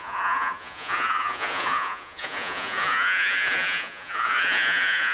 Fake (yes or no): yes